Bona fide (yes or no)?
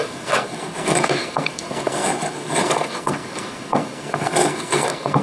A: no